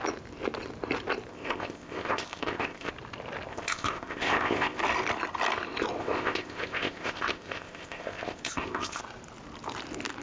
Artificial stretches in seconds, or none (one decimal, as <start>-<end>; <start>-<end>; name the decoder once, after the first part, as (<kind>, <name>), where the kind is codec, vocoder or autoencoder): 1.3-2.9 (codec, ZipCodec); 3.5-4.8; 6.0-9.0